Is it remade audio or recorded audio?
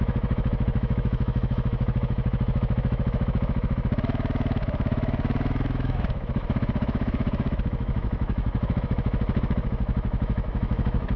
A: remade